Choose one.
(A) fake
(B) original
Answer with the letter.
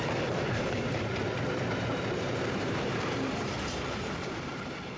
A